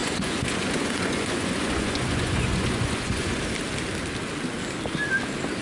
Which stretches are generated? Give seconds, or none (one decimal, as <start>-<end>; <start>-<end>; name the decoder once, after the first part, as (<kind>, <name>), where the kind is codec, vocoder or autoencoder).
0.0-3.4 (vocoder, Vocos)